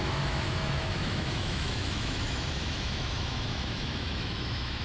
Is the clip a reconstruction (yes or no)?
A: yes